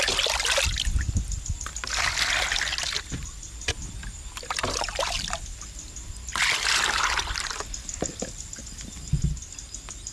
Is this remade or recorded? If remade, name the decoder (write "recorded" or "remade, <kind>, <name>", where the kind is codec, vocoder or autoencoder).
recorded